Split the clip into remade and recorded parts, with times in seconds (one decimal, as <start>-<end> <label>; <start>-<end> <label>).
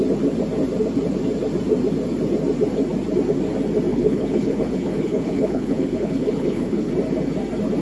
0.0-3.9 recorded; 3.9-6.9 remade; 6.9-7.8 recorded